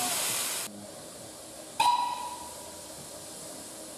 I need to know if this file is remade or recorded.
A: recorded